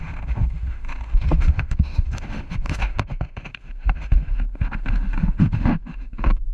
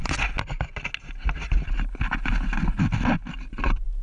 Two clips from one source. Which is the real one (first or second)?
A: second